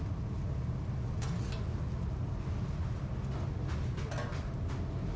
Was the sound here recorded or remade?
recorded